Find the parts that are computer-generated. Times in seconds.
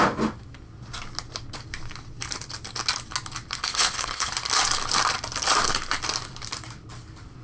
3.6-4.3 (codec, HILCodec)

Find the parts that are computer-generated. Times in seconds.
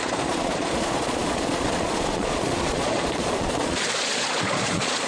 0.0-5.1 (vocoder, Vocos)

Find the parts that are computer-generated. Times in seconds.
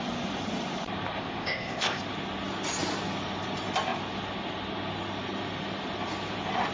1.2-2.0 (codec, ZipCodec)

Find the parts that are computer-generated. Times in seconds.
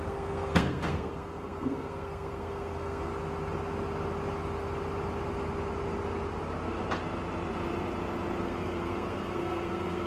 0.0-3.1 (codec, SNAC); 8.4-10.1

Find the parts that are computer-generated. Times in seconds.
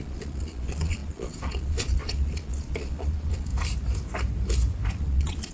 0.0-3.5 (vocoder, Vocos); 5.0-5.5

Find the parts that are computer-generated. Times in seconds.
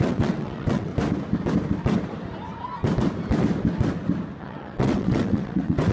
0.0-0.9 (vocoder, WaveNeXt); 4.4-5.9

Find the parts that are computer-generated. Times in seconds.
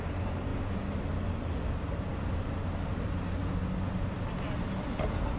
0.0-0.5 (vocoder, BigVGAN v2); 1.7-2.1; 2.9-3.4; 4.7-5.4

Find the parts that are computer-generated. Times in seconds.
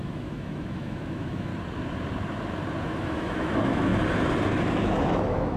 0.0-1.5 (autoencoder, DAC-VAE); 2.8-3.9; 4.5-5.6